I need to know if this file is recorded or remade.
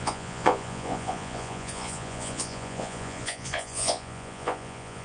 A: remade